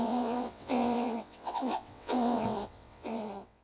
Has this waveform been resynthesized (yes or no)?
yes